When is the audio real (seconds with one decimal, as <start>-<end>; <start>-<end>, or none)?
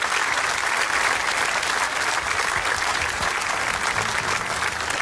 0.0-2.9; 3.6-5.0